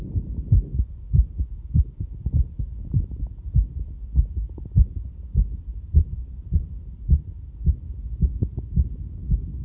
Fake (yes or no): no